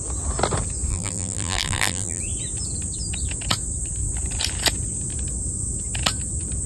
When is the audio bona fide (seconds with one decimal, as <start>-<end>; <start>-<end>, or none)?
0.0-0.9; 2.2-6.7